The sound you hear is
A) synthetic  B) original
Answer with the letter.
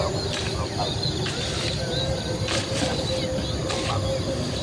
B